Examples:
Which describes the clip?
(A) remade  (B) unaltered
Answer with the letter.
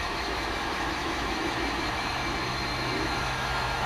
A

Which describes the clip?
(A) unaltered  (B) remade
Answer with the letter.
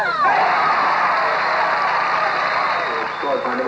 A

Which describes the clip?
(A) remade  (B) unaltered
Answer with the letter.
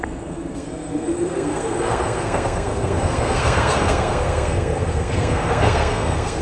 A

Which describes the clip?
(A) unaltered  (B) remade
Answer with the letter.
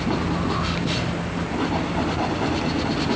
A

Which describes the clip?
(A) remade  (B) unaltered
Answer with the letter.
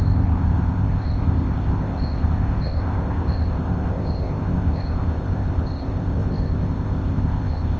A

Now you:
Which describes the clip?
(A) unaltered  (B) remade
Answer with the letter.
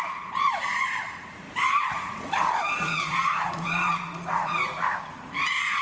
B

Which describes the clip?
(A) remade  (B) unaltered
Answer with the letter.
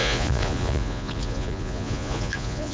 A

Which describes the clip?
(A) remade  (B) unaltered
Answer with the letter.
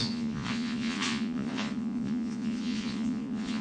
A